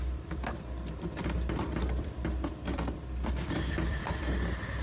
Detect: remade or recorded remade